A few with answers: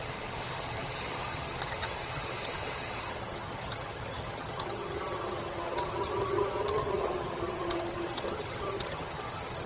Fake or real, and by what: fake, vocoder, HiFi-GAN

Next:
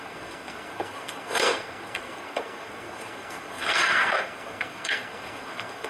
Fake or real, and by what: fake, codec, SNAC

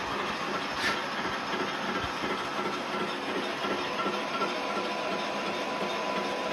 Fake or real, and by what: real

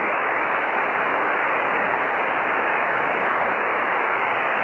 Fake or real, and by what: fake, codec, DAC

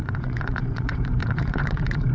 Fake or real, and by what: fake, vocoder, Vocos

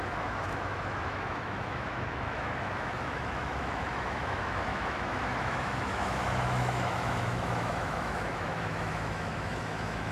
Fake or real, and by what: fake, autoencoder, DAC-VAE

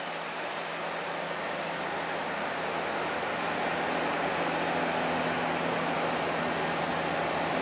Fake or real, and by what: real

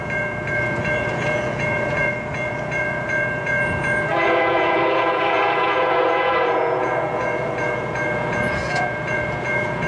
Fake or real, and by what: fake, vocoder, Vocos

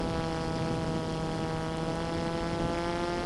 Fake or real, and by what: real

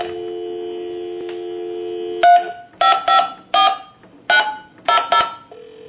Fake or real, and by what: real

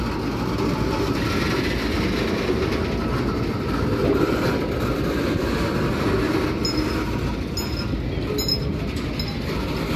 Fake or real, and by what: real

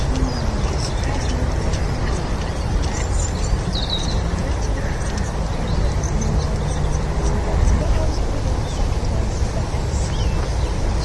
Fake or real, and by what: real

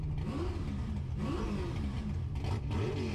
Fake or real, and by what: real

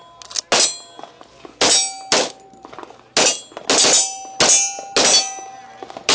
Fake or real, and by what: real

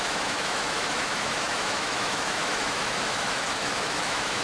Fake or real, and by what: fake, autoencoder, DAC-VAE